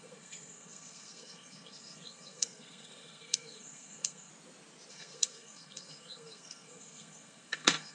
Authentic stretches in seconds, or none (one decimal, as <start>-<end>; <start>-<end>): 4.3-4.9